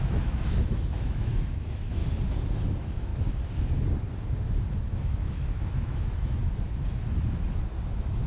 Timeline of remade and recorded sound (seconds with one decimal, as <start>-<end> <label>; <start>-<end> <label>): 0.0-2.0 remade; 2.0-2.5 recorded; 2.5-3.1 remade; 3.1-4.8 recorded; 4.8-6.4 remade; 6.4-7.9 recorded; 7.9-8.3 remade